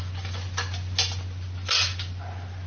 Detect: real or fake real